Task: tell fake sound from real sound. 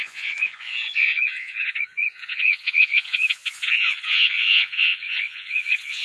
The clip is fake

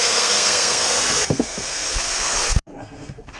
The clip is fake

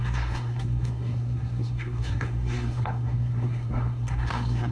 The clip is fake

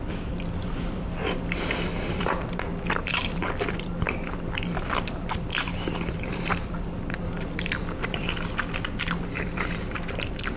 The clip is fake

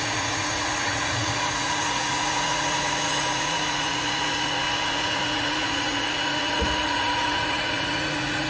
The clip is fake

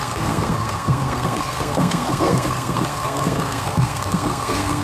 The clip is fake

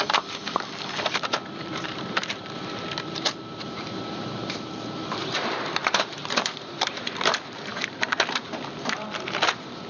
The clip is fake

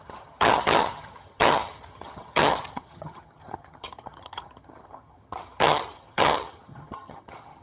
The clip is fake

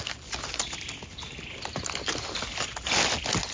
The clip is real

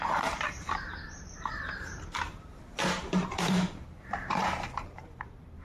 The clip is fake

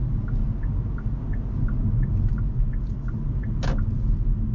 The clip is real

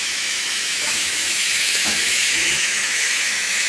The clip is fake